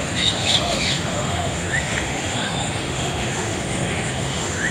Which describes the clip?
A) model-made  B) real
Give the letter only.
A